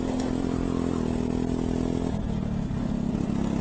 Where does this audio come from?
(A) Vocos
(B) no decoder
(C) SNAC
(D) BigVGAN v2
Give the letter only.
B